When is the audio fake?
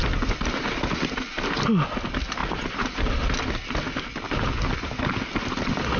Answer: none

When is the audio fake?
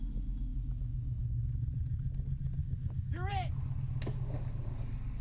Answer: 0.5-1.5 (autoencoder, DAC-VAE); 2.6-3.3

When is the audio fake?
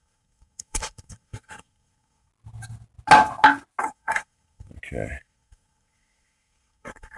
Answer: 0.0-2.3 (codec, SNAC); 3.8-4.7; 5.2-7.2